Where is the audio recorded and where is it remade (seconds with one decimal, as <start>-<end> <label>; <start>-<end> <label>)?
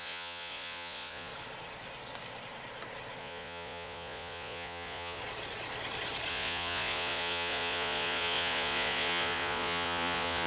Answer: 0.0-1.3 remade; 1.3-3.2 recorded; 3.2-5.2 remade; 5.2-6.3 recorded; 6.3-10.5 remade